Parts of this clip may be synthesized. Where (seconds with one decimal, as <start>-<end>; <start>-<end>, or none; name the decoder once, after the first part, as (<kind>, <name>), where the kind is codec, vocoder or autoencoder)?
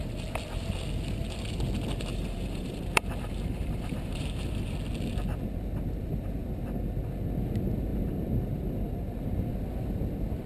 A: 2.1-4.7 (vocoder, BigVGAN v2)